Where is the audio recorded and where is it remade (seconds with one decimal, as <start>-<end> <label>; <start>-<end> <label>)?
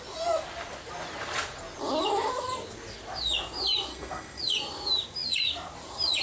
0.0-3.9 recorded; 3.9-4.4 remade; 4.4-6.2 recorded